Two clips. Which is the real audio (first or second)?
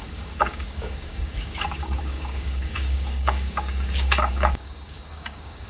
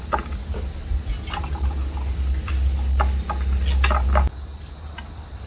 second